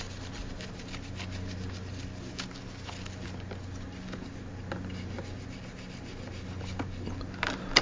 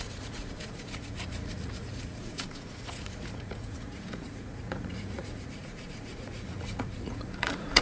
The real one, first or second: first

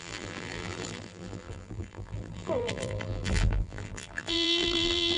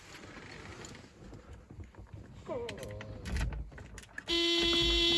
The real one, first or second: second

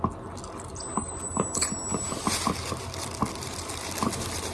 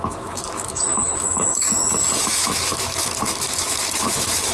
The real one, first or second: first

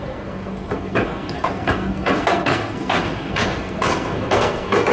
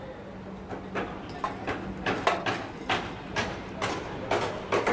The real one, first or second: second